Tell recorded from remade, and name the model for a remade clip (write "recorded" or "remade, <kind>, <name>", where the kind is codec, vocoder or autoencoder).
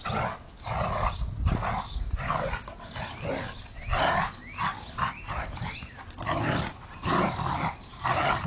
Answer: recorded